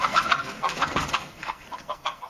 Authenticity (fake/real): fake